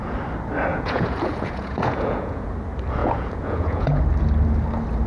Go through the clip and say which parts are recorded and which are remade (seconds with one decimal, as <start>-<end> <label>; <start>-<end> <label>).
0.0-0.7 recorded; 0.7-2.5 remade; 2.5-3.0 recorded; 3.0-4.0 remade; 4.0-5.1 recorded